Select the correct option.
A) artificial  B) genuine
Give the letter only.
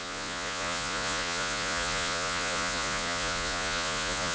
A